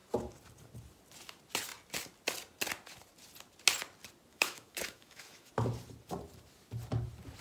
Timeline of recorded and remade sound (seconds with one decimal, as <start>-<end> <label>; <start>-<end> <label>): 0.0-4.3 recorded; 4.3-5.5 remade; 5.5-7.4 recorded